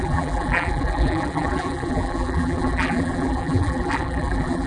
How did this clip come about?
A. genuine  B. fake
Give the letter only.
B